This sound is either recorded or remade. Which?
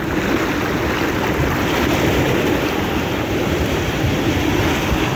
recorded